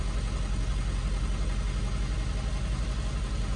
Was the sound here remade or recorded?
recorded